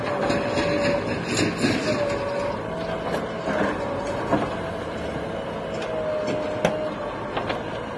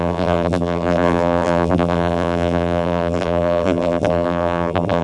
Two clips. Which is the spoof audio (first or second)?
second